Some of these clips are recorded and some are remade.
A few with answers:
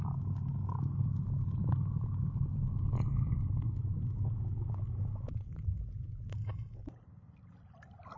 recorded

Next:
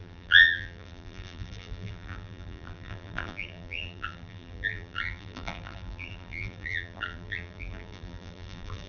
remade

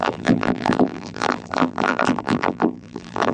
remade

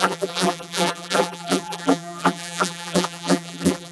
remade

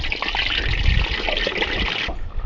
recorded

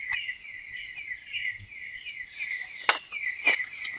recorded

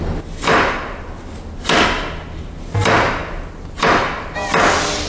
recorded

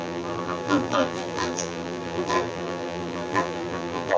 remade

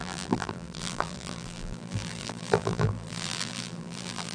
remade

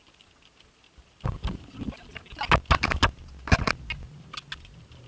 recorded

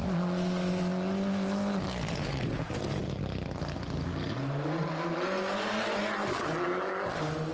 recorded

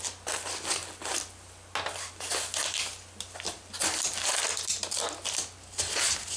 recorded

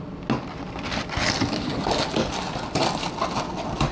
recorded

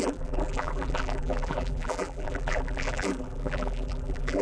remade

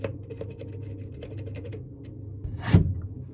recorded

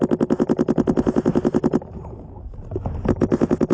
recorded